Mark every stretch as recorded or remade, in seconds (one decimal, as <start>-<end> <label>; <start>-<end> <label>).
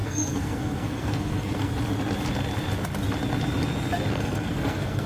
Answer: 0.0-1.7 remade; 1.7-4.1 recorded; 4.1-5.1 remade